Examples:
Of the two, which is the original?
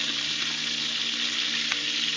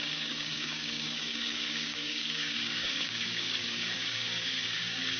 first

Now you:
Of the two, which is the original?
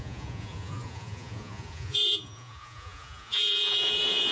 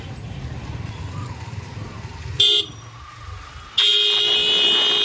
second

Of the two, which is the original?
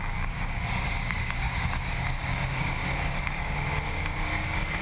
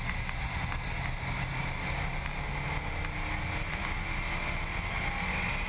second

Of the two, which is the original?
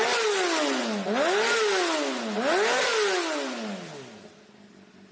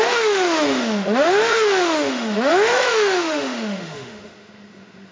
first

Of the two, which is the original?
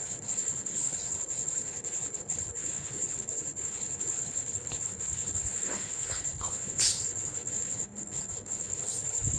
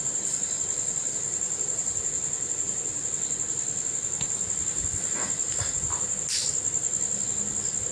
second